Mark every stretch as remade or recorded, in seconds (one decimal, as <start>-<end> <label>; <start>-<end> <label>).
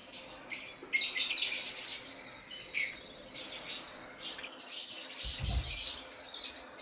0.0-6.8 recorded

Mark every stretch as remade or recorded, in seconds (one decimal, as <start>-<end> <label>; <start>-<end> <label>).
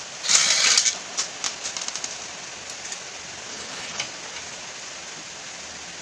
0.0-3.5 recorded; 3.5-4.0 remade; 4.0-6.0 recorded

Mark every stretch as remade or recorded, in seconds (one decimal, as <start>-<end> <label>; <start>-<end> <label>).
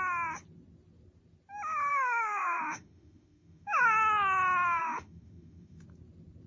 0.0-1.9 recorded; 1.9-3.8 remade; 3.8-4.8 recorded; 4.8-5.8 remade; 5.8-6.5 recorded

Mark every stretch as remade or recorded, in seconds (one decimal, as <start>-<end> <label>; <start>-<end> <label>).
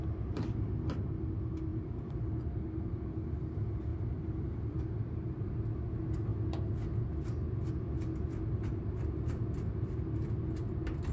0.0-3.9 recorded; 3.9-4.8 remade; 4.8-11.1 recorded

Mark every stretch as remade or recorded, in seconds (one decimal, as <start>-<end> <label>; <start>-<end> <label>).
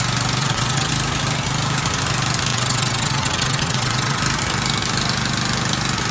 0.0-0.4 recorded; 0.4-0.9 remade; 0.9-2.5 recorded; 2.5-4.2 remade; 4.2-6.1 recorded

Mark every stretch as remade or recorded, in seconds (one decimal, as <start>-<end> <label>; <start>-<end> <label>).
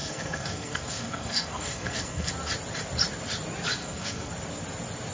0.0-2.3 remade; 2.3-3.8 recorded; 3.8-4.3 remade; 4.3-5.1 recorded